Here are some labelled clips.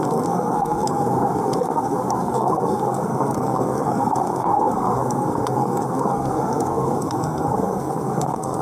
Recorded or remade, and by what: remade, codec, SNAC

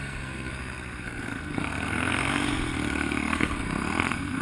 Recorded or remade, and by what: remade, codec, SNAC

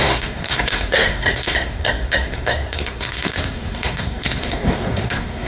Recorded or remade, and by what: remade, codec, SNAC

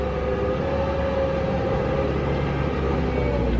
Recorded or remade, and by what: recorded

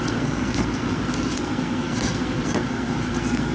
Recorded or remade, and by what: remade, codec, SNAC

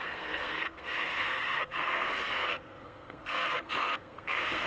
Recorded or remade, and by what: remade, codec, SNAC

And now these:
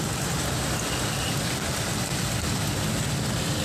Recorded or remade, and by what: recorded